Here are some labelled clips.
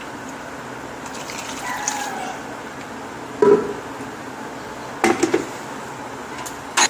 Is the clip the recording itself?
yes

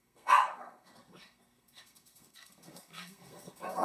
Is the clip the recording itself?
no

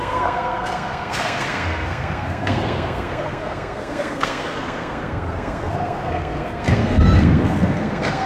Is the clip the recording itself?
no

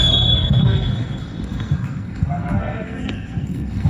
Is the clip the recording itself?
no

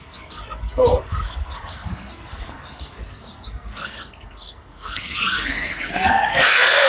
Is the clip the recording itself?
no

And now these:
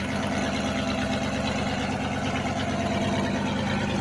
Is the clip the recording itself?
yes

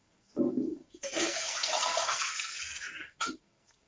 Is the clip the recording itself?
no